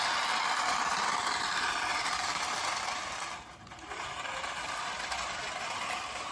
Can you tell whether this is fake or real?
real